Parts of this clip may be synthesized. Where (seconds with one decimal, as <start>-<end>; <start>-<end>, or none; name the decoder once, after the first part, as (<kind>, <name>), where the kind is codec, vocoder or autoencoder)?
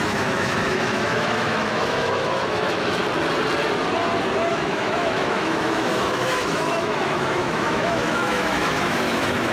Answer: 0.0-3.0 (autoencoder, DAC-VAE); 4.5-9.5